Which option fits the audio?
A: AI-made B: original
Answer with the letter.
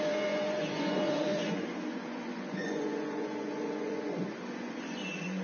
A